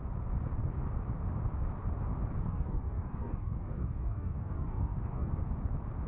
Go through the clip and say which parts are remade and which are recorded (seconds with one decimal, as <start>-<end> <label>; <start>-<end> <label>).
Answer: 0.0-2.4 recorded; 2.4-5.3 remade; 5.3-6.1 recorded